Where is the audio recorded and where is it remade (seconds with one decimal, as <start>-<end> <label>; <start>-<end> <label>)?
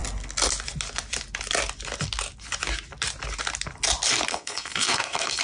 0.0-4.3 recorded; 4.3-5.4 remade